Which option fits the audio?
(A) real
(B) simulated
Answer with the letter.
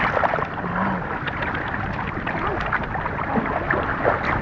A